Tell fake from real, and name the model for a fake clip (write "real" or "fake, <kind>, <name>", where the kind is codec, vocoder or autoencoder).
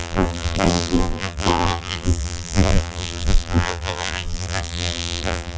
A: fake, vocoder, BigVGAN v2